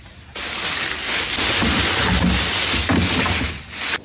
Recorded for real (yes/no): yes